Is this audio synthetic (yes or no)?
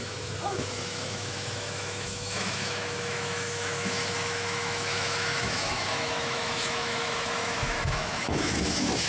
yes